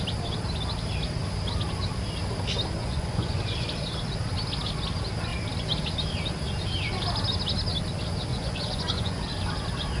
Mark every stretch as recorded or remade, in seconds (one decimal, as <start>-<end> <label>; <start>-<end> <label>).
0.0-2.8 recorded; 2.8-3.4 remade; 3.4-8.3 recorded; 8.3-9.2 remade; 9.2-10.0 recorded